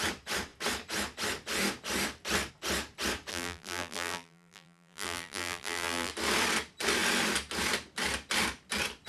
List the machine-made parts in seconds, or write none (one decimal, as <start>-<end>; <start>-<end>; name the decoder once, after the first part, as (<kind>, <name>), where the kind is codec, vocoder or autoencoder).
3.3-6.1 (vocoder, BigVGAN v2)